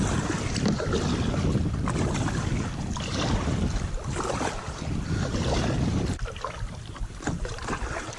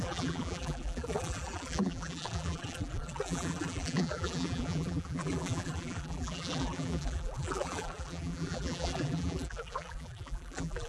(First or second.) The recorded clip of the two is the first